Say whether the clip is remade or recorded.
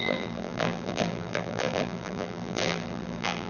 remade